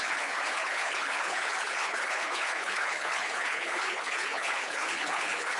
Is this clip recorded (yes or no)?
no